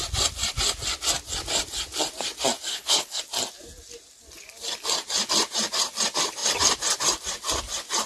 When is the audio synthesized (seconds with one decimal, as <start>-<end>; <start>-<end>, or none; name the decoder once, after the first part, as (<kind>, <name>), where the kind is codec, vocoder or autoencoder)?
2.7-3.2 (codec, HILCodec)